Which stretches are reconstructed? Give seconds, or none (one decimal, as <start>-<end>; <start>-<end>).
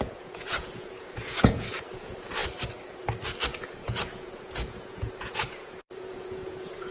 0.0-2.4; 3.6-6.9